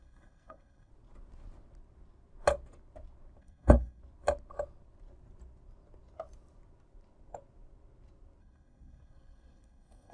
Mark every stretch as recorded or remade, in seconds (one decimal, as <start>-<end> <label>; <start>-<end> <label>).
0.0-0.9 remade; 0.9-3.4 recorded; 3.4-4.0 remade; 4.0-8.4 recorded; 8.4-10.1 remade